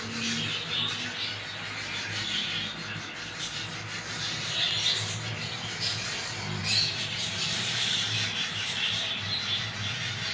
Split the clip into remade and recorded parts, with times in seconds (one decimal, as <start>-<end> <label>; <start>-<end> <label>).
0.0-6.6 recorded; 6.6-9.6 remade; 9.6-10.3 recorded

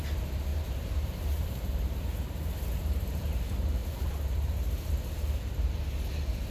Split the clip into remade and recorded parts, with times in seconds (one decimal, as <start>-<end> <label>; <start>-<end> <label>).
0.0-0.5 recorded; 0.5-3.2 remade; 3.2-3.8 recorded; 3.8-4.9 remade; 4.9-6.5 recorded

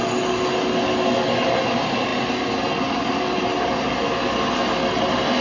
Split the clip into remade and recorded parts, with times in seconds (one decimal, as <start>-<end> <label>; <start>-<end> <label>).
0.0-5.4 recorded

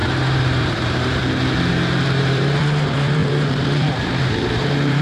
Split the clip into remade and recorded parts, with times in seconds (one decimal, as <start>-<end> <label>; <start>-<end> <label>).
0.0-1.2 remade; 1.2-2.2 recorded; 2.2-5.0 remade